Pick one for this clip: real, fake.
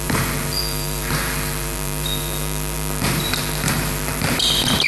fake